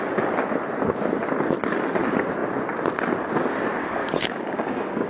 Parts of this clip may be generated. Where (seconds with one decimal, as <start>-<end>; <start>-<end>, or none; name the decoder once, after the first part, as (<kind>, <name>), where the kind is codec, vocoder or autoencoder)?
4.0-5.1 (codec, DAC)